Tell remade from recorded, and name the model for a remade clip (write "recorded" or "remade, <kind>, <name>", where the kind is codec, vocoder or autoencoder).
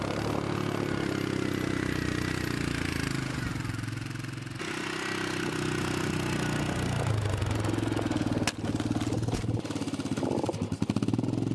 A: recorded